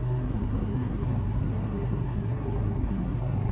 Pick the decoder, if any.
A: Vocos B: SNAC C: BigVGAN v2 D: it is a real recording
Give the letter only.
B